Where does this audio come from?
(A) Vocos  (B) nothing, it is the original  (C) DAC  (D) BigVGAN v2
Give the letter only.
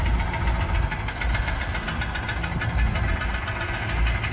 B